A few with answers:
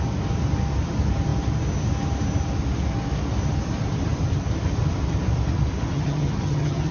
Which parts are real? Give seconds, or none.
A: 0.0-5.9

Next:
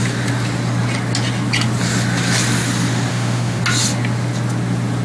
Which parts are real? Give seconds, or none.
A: 0.0-3.1; 3.6-5.0

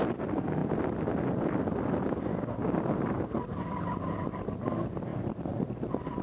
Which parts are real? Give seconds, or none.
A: 0.0-2.6; 4.2-6.2

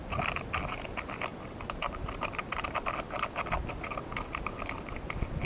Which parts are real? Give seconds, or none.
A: 0.0-5.5